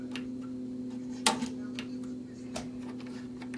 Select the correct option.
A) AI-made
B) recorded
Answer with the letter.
B